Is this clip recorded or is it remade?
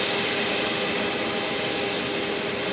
recorded